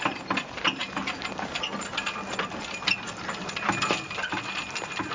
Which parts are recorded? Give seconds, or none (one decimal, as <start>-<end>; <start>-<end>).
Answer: 0.0-5.1